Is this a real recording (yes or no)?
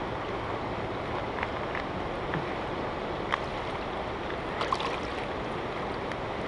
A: yes